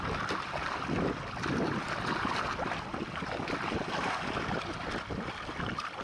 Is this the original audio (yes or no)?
yes